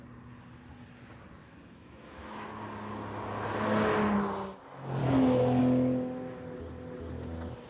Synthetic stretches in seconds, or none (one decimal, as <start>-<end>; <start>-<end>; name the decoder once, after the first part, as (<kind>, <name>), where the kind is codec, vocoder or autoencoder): 1.4-2.6 (autoencoder, DAC-VAE); 5.0-5.6